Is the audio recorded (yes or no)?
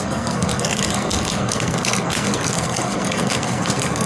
no